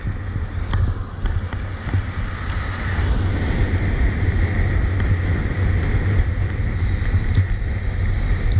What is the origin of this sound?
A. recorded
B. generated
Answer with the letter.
A